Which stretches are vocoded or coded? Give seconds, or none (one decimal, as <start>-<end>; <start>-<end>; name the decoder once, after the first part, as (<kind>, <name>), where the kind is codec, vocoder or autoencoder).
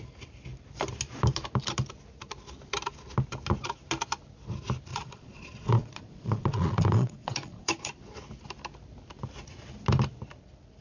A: 4.9-7.9 (vocoder, Vocos)